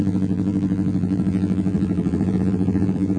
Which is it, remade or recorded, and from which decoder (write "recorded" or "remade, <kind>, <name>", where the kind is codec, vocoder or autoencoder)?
remade, vocoder, BigVGAN v2